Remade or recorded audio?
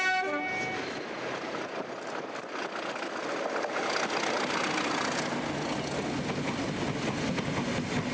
recorded